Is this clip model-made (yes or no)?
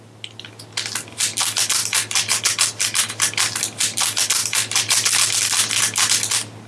no